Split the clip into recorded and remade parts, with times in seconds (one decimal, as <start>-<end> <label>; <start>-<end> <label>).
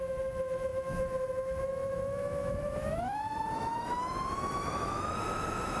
0.0-5.8 remade